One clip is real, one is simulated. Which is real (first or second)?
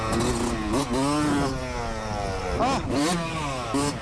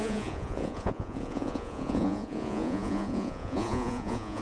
first